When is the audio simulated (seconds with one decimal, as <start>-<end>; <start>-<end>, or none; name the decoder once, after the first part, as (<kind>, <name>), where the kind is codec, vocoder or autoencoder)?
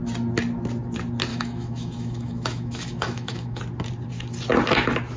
1.3-3.6 (autoencoder, DAC-VAE)